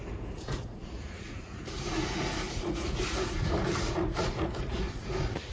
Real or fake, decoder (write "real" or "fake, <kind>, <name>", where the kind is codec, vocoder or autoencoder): fake, vocoder, Vocos